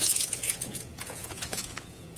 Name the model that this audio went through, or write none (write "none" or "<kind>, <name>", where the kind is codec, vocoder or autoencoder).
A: vocoder, Vocos